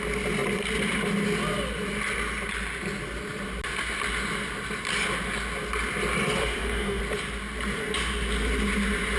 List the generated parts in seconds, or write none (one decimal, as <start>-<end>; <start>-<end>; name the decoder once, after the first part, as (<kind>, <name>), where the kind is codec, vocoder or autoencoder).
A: 6.4-7.0 (autoencoder, DAC-VAE)